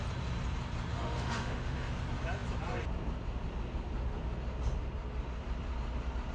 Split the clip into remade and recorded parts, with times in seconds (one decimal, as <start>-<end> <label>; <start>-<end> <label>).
0.0-0.9 recorded; 0.9-1.9 remade; 1.9-6.3 recorded